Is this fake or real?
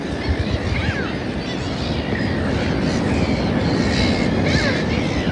real